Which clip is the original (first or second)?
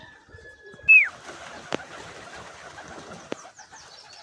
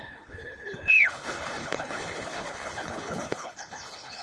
first